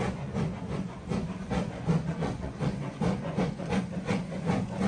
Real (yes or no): no